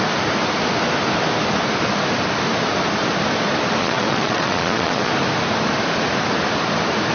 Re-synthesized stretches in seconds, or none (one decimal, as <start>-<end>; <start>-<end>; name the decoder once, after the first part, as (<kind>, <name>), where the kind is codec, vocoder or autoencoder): 3.8-5.1 (vocoder, Vocos)